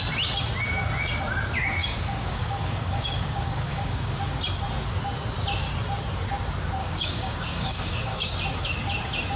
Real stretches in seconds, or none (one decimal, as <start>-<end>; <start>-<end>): 0.0-1.8; 4.2-6.8; 8.3-9.4

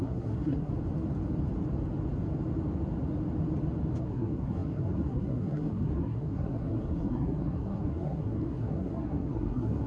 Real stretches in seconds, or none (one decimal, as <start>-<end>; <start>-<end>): 0.7-4.0

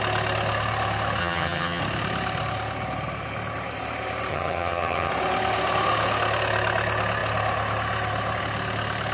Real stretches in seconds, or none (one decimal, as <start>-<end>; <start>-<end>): 0.0-1.2; 1.8-4.3; 5.1-9.1

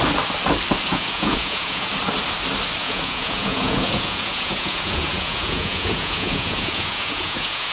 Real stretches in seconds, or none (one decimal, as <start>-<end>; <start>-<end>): 0.0-0.9; 1.9-2.8

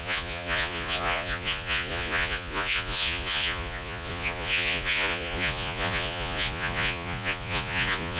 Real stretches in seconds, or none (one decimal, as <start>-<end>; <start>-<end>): none

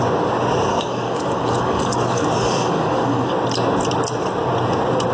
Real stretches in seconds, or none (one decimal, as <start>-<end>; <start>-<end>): 0.0-0.7; 3.3-5.1

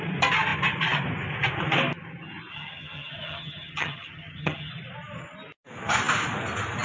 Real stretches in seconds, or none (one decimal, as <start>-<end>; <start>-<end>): 0.0-2.5; 4.7-6.8